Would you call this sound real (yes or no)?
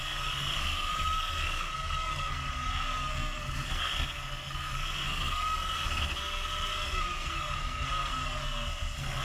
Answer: no